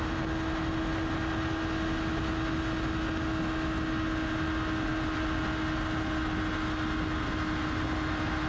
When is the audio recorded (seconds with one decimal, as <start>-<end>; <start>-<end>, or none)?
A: 0.0-8.5